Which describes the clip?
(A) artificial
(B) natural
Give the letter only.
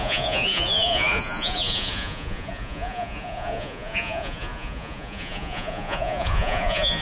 A